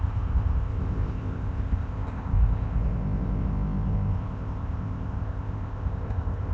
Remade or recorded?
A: remade